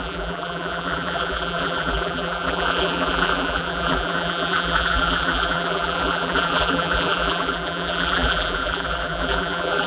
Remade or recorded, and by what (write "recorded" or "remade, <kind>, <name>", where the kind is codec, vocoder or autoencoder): remade, vocoder, BigVGAN v2